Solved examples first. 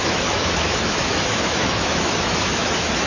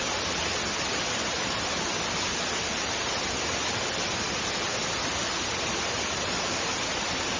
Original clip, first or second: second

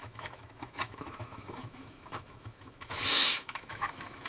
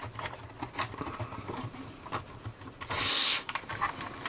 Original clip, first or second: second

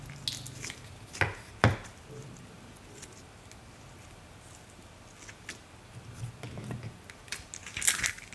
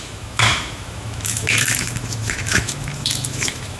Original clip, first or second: first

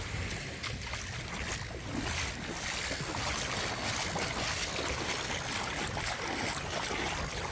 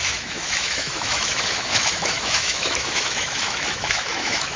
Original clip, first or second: first